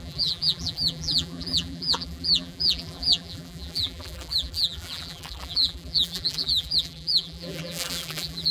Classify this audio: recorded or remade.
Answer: remade